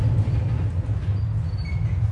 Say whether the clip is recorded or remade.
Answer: recorded